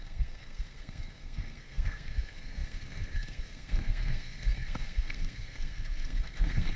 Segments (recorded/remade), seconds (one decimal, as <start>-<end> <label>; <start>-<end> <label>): 0.0-6.8 remade